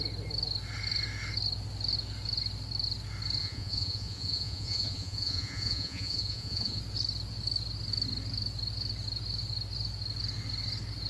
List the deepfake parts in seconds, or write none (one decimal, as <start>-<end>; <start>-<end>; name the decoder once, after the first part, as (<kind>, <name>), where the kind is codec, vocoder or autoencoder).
3.4-6.8 (vocoder, Vocos)